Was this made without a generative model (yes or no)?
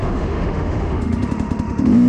no